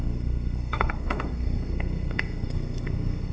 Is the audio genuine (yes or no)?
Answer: no